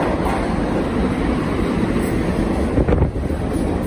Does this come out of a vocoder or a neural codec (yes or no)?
yes